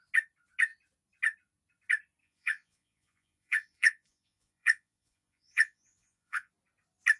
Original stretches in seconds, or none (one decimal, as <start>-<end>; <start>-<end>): 0.0-2.2; 6.5-7.2